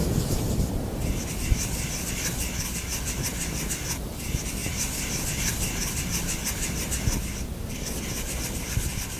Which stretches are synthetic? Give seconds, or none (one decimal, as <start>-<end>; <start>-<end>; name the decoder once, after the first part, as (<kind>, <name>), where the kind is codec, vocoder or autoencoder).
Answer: none